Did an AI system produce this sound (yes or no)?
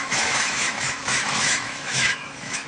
yes